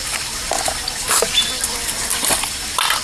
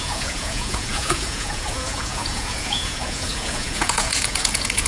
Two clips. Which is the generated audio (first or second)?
second